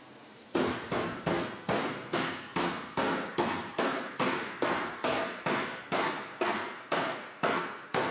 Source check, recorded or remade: remade